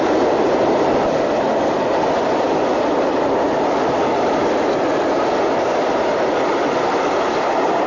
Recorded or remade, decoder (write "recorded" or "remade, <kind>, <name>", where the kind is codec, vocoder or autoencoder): recorded